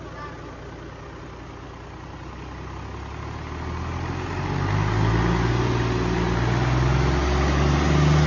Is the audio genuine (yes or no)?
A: yes